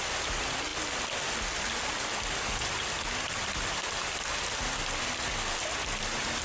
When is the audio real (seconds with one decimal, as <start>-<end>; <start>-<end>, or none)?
0.0-6.4